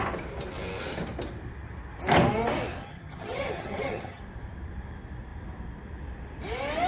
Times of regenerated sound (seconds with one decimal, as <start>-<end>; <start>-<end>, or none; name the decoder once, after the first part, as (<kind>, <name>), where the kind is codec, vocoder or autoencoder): 2.8-4.2 (vocoder, HiFi-GAN)

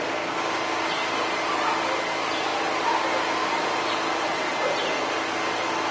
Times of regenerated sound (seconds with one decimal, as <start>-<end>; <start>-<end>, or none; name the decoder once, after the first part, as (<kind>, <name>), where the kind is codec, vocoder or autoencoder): 2.5-5.0 (vocoder, BigVGAN v2)

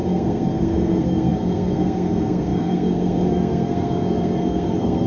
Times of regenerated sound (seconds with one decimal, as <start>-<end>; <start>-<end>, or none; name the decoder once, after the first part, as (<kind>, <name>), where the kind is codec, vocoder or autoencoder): 0.0-5.1 (codec, SNAC)

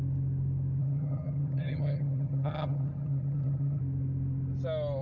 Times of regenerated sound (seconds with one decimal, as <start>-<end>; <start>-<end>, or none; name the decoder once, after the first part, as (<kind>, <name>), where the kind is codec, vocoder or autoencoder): 0.8-3.8 (vocoder, HiFi-GAN)